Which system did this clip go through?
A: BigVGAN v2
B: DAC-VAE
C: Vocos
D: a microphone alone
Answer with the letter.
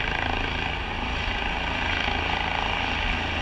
D